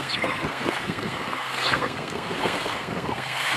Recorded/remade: remade